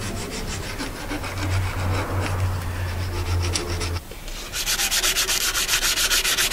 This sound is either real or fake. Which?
real